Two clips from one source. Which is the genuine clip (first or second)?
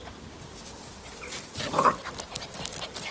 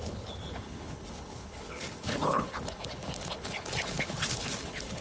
first